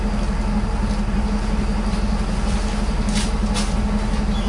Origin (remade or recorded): recorded